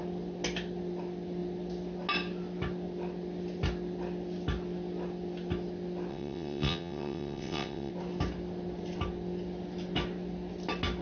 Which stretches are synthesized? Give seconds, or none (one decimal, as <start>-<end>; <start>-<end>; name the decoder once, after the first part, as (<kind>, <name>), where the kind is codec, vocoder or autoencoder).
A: 6.1-7.9 (vocoder, WaveNeXt)

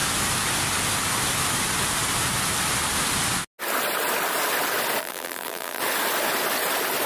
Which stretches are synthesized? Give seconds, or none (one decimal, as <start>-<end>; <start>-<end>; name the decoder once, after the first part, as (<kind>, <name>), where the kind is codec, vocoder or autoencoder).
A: 5.0-5.8 (vocoder, BigVGAN v2)